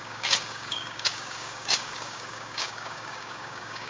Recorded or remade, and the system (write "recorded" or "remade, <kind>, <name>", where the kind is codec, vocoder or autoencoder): remade, codec, DAC